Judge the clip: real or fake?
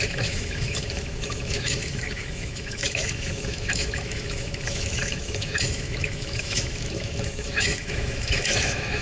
fake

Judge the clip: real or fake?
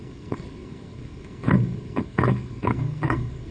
fake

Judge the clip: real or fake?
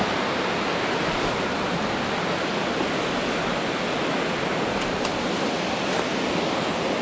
real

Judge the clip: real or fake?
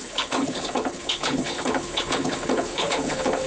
fake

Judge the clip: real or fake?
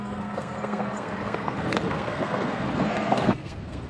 fake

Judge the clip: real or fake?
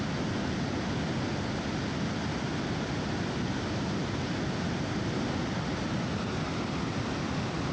real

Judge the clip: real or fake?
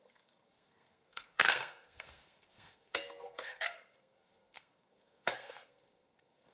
fake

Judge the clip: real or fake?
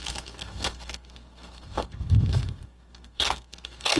fake